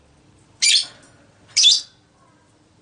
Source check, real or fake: fake